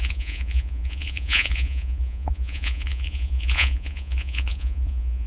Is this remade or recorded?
remade